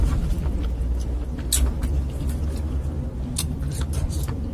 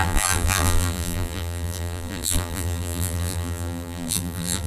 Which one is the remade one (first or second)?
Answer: second